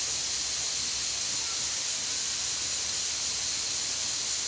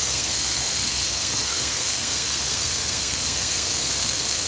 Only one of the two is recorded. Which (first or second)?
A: first